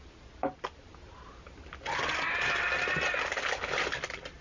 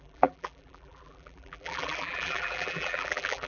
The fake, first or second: second